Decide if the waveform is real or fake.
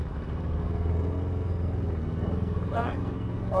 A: fake